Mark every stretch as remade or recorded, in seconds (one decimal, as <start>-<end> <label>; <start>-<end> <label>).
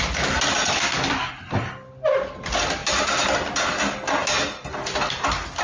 0.0-5.6 recorded